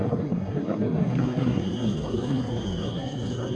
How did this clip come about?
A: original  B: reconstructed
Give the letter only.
B